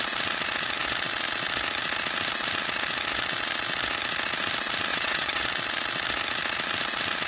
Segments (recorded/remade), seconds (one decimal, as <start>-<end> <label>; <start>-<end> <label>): 0.0-4.9 recorded; 4.9-5.4 remade; 5.4-7.3 recorded